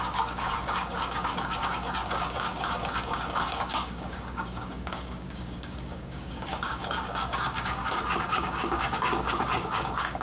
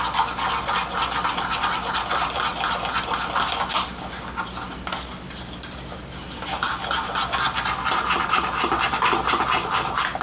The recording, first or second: second